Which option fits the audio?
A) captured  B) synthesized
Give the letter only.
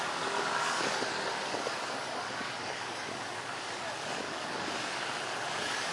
B